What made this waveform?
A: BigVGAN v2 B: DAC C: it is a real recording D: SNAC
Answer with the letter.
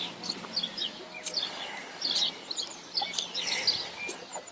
C